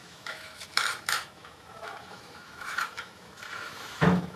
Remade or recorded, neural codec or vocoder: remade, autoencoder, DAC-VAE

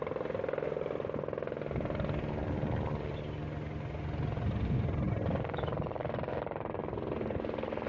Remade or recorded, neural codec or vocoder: recorded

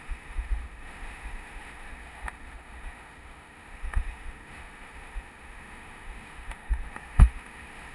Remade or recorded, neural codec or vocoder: remade, autoencoder, DAC-VAE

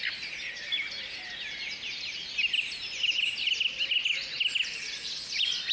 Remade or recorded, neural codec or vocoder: recorded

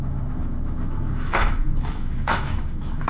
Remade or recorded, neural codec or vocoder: remade, autoencoder, DAC-VAE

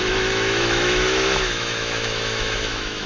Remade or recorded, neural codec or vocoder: remade, autoencoder, DAC-VAE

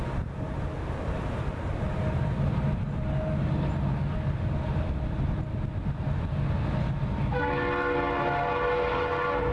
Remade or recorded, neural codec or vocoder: recorded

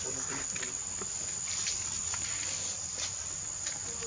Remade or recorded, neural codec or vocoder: recorded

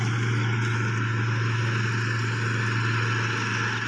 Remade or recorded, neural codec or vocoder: recorded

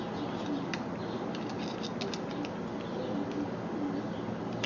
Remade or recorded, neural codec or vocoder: recorded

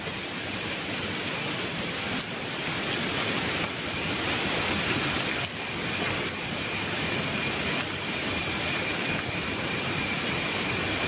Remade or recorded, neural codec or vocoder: recorded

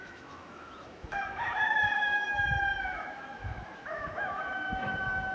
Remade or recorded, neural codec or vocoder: remade, autoencoder, DAC-VAE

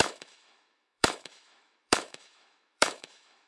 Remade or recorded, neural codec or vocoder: remade, autoencoder, DAC-VAE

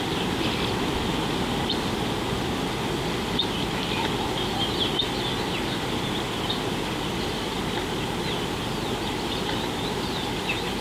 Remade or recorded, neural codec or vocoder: recorded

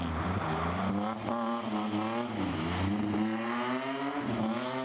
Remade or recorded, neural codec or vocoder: recorded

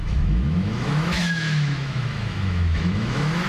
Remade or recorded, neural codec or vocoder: remade, autoencoder, DAC-VAE